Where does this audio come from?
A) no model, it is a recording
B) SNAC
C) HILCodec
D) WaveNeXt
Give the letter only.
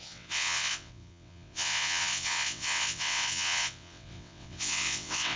D